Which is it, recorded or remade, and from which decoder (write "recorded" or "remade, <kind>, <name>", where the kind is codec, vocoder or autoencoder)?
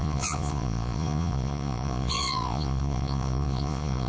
remade, vocoder, Vocos